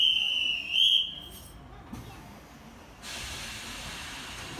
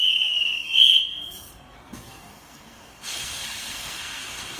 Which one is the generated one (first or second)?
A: second